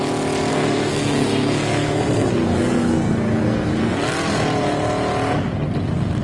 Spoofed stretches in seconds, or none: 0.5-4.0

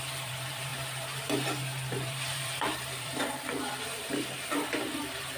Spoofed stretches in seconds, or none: 0.0-5.4

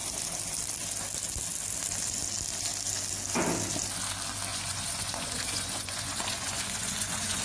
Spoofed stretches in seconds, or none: 4.5-7.4

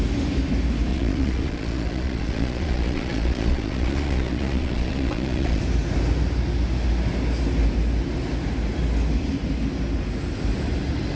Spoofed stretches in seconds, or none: 0.9-5.6

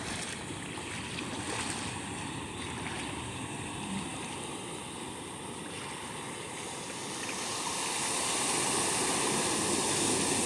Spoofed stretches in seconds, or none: none

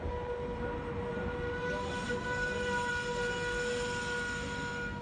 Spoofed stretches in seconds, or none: 1.1-2.9

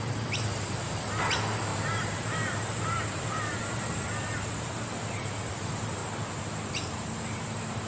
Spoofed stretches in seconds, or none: 0.0-6.0; 6.7-7.9

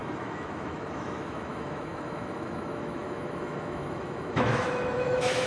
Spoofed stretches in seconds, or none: 0.0-5.5